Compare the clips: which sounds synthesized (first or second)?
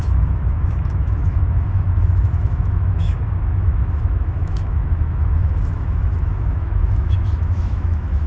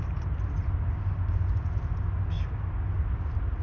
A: first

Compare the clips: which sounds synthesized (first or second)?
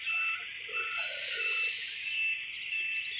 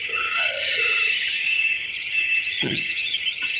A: second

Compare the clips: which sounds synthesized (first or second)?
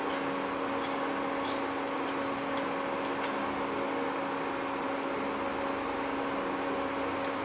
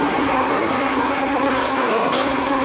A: second